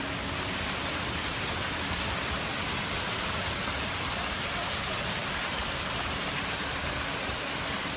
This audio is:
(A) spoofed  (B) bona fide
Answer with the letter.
B